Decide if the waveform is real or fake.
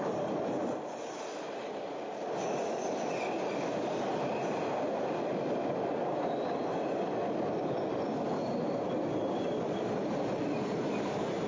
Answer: real